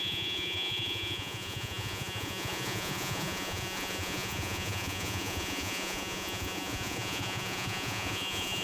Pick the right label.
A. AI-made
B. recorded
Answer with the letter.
A